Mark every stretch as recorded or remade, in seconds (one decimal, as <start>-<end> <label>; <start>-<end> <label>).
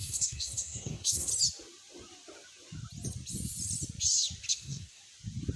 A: 0.0-1.3 remade; 1.3-4.5 recorded; 4.5-5.0 remade; 5.0-5.6 recorded